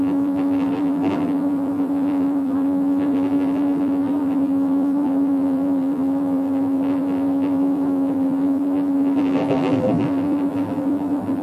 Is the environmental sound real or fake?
fake